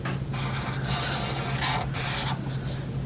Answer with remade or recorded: recorded